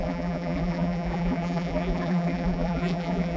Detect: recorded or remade remade